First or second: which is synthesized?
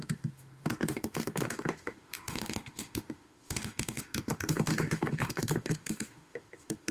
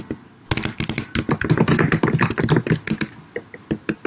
first